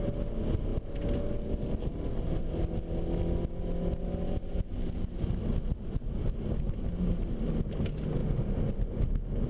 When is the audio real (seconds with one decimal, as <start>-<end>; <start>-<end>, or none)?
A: 0.0-9.5